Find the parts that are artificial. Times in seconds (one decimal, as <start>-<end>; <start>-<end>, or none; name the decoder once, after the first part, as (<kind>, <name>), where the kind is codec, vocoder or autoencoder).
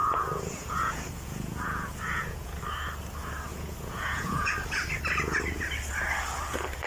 0.0-2.6 (vocoder, Vocos); 3.5-4.5